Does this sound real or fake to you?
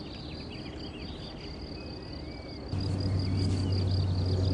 real